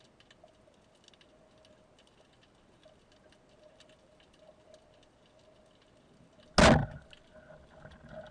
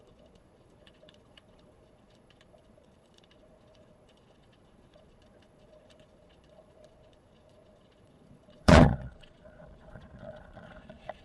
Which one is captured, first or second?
first